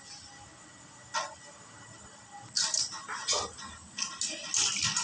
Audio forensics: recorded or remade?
recorded